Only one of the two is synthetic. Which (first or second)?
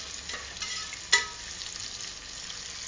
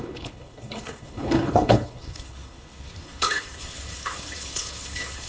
second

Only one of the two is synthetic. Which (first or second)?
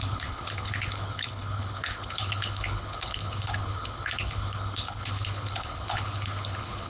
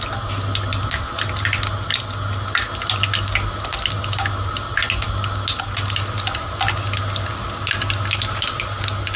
first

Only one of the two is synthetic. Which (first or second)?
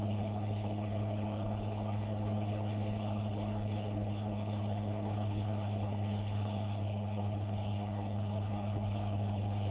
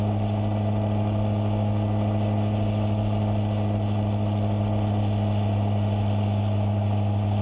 first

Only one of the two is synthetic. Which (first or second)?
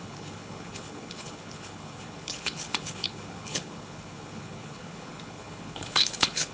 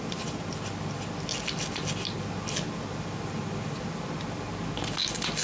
first